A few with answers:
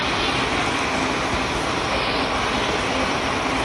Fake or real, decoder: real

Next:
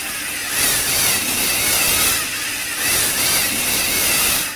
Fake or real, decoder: real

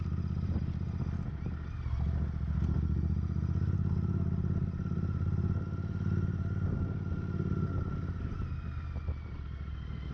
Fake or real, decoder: real